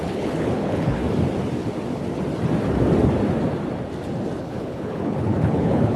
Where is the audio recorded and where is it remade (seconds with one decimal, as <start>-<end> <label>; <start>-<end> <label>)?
0.0-1.0 remade; 1.0-4.4 recorded; 4.4-6.0 remade